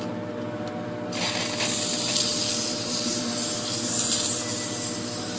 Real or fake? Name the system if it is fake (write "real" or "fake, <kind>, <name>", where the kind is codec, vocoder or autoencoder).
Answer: real